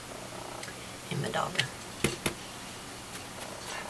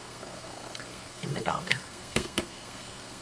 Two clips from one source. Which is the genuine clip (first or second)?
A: first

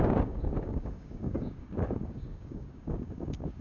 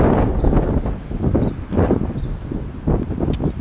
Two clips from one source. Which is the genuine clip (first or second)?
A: second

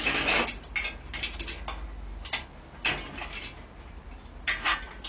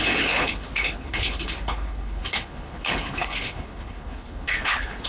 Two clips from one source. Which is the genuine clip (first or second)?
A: first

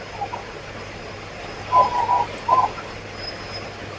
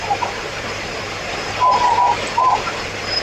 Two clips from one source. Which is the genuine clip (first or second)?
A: first